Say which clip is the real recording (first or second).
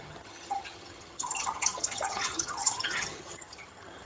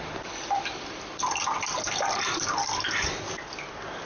second